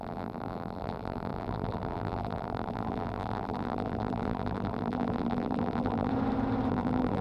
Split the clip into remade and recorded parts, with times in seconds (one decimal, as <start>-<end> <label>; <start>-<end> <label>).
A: 0.0-6.1 remade; 6.1-6.7 recorded; 6.7-7.2 remade